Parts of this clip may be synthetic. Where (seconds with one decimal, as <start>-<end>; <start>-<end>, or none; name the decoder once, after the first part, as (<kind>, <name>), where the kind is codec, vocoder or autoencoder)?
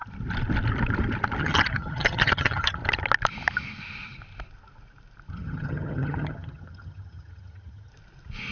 1.4-2.8 (vocoder, HiFi-GAN); 5.3-7.9